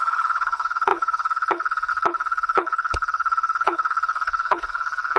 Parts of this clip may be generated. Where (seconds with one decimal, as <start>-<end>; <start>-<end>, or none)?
0.0-5.2